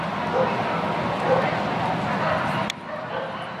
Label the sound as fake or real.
real